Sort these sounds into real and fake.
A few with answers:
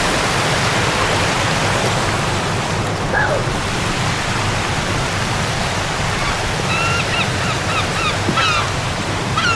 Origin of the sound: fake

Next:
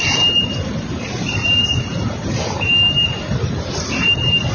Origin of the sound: real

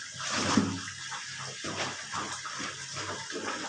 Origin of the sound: real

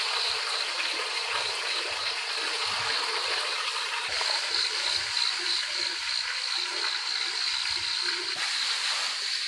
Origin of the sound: real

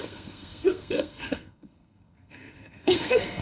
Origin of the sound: fake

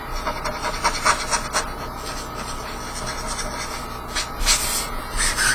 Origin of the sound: real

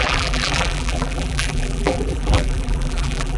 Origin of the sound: fake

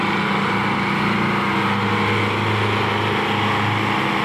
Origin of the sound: real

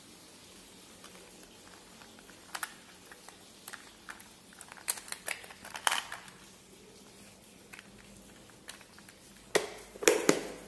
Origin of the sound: real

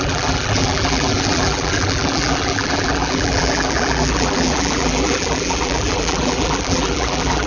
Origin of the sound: fake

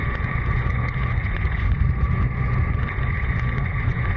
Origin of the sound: fake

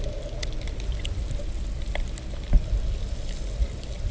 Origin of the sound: real